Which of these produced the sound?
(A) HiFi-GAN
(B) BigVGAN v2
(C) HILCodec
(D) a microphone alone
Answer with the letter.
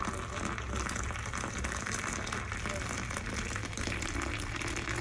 D